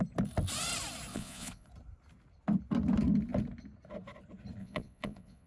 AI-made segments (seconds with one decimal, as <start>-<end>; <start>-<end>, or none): 1.1-1.7; 4.6-5.5